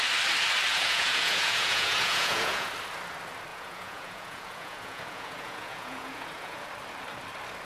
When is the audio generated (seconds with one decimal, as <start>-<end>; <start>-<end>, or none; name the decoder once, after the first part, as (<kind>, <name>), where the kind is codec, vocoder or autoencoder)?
0.7-2.7 (vocoder, Vocos); 3.5-6.7